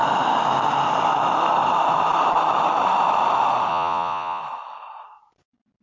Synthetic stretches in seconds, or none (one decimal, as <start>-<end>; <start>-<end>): 3.7-4.4